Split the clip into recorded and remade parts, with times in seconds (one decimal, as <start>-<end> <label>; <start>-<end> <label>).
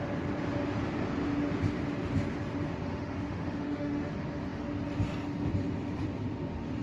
0.0-2.9 recorded; 2.9-4.1 remade; 4.1-6.8 recorded